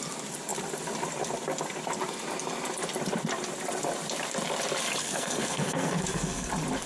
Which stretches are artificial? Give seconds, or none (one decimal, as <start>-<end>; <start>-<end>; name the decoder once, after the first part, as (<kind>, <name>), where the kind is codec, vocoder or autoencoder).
5.0-6.5 (codec, SNAC)